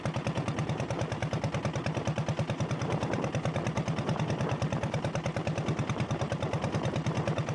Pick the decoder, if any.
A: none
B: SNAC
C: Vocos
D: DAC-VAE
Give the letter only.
A